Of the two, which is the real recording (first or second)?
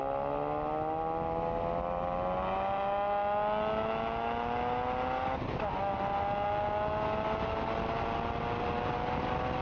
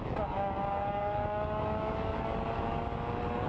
first